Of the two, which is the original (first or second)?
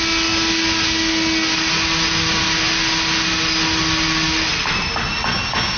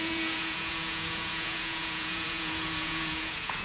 first